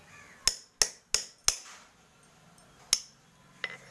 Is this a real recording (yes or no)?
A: yes